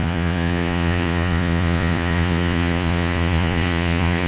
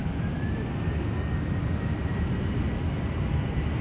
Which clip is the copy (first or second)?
first